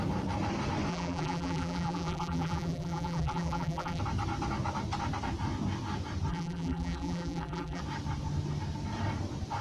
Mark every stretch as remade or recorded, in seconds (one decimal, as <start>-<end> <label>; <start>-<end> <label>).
0.0-0.9 recorded; 0.9-4.0 remade; 4.0-6.3 recorded; 6.3-7.8 remade; 7.8-9.6 recorded